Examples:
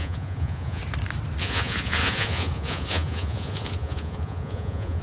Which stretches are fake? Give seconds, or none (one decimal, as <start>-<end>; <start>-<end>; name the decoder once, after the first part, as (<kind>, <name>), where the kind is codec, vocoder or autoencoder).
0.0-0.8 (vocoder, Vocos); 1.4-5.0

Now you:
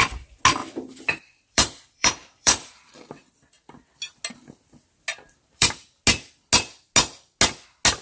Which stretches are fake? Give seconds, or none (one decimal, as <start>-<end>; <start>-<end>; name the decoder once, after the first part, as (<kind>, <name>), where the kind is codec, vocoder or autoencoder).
0.6-3.3 (vocoder, BigVGAN v2); 5.1-5.7

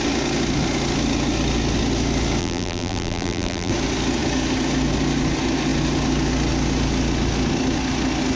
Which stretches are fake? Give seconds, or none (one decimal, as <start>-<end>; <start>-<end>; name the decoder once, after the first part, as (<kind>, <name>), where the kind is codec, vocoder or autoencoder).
2.4-3.7 (vocoder, BigVGAN v2)

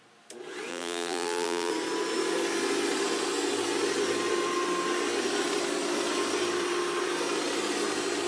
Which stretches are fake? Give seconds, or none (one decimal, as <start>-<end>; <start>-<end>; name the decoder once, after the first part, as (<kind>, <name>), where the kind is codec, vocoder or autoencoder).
0.7-1.7 (vocoder, BigVGAN v2)

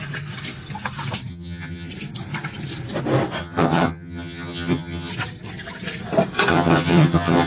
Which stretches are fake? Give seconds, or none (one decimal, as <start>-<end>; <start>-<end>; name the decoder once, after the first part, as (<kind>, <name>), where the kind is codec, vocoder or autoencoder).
1.3-1.9 (vocoder, HiFi-GAN); 3.4-5.1; 6.5-7.5

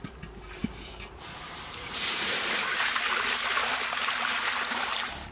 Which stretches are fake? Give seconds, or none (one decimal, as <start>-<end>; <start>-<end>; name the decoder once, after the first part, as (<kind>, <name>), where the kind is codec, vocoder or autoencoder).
none

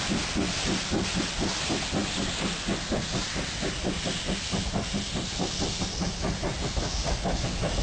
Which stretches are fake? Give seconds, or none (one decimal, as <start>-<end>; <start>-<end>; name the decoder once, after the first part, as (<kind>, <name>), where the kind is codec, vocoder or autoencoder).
none